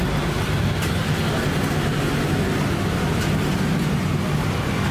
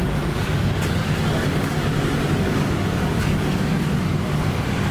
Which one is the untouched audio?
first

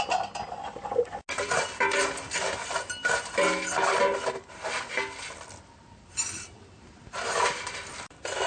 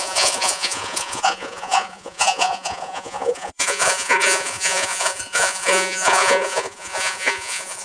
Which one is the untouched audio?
first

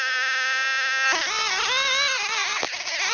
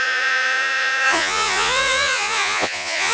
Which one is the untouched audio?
first